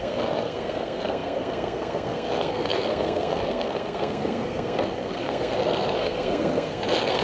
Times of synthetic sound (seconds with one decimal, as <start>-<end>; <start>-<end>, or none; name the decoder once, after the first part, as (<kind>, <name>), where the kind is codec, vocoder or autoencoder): 0.0-7.2 (codec, SNAC)